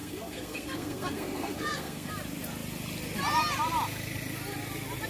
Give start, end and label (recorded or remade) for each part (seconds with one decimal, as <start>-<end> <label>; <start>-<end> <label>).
0.0-2.1 remade; 2.1-5.1 recorded